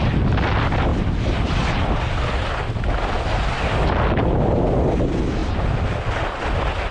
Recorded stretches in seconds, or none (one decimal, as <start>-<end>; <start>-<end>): 0.0-6.9